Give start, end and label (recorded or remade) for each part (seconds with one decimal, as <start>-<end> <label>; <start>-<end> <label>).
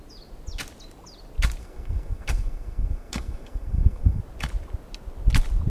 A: 0.0-1.6 recorded; 1.6-4.2 remade; 4.2-5.7 recorded